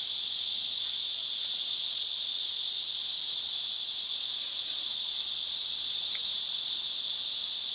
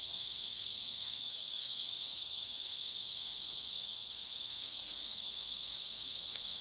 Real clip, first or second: first